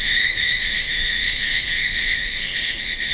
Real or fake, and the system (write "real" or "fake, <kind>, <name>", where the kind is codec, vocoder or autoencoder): fake, autoencoder, DAC-VAE